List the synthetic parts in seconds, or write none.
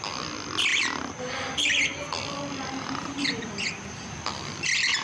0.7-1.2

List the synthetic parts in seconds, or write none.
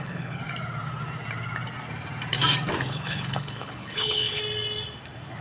0.0-0.4; 2.9-4.4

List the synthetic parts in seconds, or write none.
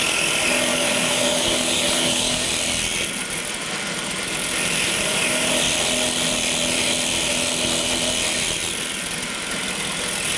0.7-2.5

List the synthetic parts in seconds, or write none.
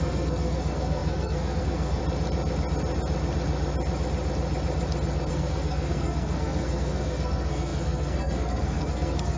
0.0-2.0; 5.3-9.4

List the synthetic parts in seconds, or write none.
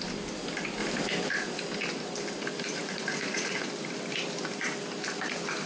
2.7-3.7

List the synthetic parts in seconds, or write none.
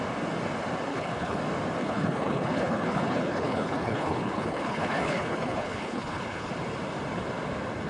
0.9-1.4; 1.8-6.5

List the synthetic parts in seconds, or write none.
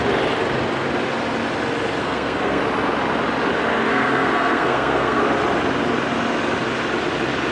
2.0-2.6; 3.9-5.2